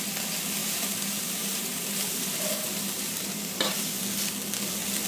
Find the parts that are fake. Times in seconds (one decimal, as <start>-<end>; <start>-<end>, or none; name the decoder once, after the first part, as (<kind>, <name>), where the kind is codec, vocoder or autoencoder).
0.6-3.7 (vocoder, BigVGAN v2)